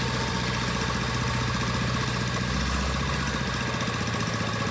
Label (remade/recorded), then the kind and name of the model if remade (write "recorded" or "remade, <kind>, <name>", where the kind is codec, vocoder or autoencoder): recorded